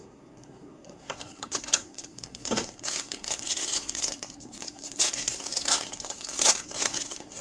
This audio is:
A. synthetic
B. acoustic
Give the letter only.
A